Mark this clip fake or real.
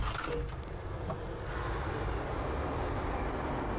real